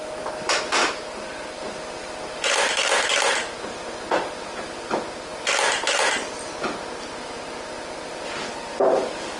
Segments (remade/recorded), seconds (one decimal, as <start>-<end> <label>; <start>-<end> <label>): 0.0-0.8 recorded; 0.8-1.6 remade; 1.6-2.0 recorded; 2.0-3.1 remade; 3.1-5.3 recorded; 5.3-6.0 remade; 6.0-9.4 recorded